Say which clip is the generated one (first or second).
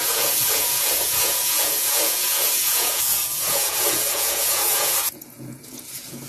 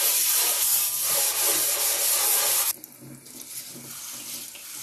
first